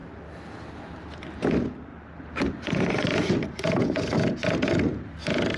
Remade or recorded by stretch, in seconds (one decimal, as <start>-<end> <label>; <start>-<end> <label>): 0.0-5.6 recorded